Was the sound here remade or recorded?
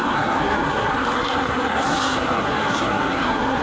remade